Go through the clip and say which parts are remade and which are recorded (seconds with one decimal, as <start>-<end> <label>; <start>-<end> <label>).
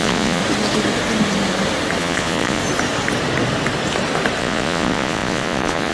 0.0-0.4 remade; 0.4-2.0 recorded; 2.0-2.6 remade; 2.6-4.4 recorded; 4.4-5.9 remade